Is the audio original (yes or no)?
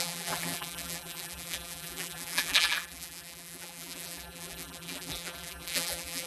no